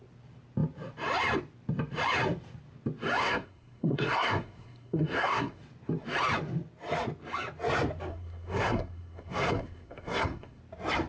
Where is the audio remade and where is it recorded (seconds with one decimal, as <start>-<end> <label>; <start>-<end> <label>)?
0.0-3.2 recorded; 3.2-5.6 remade; 5.6-8.1 recorded; 8.1-10.6 remade; 10.6-11.1 recorded